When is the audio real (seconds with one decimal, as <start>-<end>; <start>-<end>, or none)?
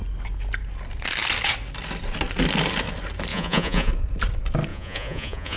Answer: 0.0-3.3; 3.9-4.7